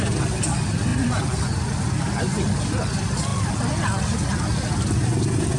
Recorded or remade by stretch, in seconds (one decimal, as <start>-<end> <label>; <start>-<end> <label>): 0.0-3.3 recorded; 3.3-3.9 remade; 3.9-5.6 recorded